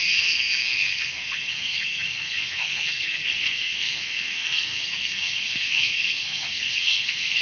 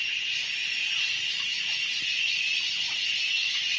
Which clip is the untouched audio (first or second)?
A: second